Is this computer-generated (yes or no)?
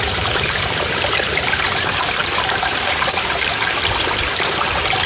yes